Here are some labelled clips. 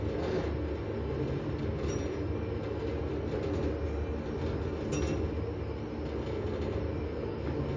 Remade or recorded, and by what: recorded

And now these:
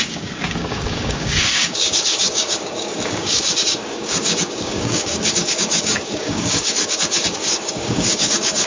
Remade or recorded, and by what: remade, codec, DAC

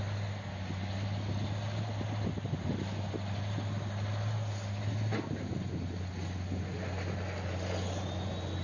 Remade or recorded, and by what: recorded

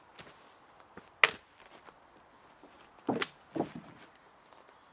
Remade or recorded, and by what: recorded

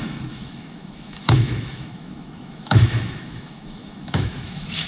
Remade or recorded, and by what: remade, autoencoder, DAC-VAE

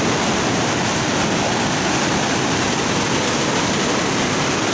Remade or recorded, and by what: recorded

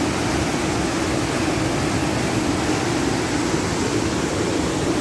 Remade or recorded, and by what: recorded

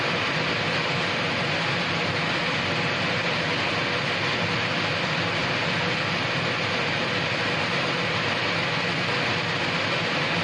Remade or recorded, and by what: recorded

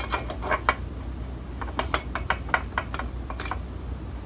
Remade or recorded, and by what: recorded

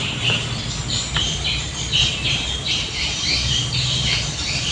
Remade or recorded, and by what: remade, vocoder, BigVGAN v2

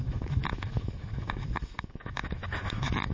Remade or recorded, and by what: remade, autoencoder, DAC-VAE